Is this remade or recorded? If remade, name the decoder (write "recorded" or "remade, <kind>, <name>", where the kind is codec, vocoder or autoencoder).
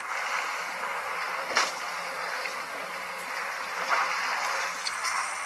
recorded